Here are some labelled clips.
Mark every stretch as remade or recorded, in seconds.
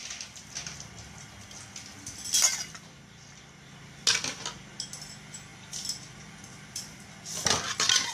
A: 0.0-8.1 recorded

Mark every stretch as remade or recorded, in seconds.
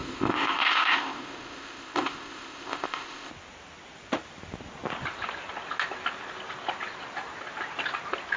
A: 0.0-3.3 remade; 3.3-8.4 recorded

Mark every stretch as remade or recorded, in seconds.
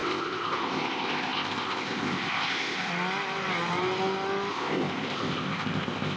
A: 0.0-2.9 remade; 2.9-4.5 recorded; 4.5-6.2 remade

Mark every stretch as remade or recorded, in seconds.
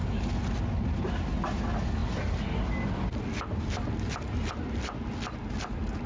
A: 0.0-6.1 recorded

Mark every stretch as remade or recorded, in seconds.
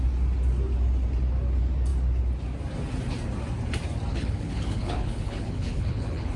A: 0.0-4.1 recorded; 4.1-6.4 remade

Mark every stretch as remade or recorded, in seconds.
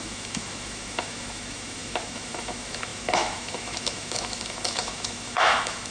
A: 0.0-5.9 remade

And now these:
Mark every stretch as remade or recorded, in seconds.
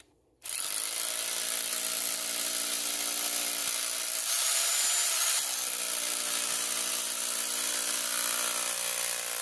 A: 0.0-9.4 recorded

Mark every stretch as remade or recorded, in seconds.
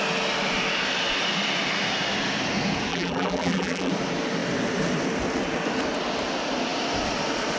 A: 0.0-2.9 recorded; 2.9-3.9 remade; 3.9-7.6 recorded